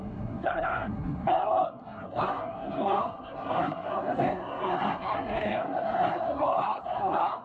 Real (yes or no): no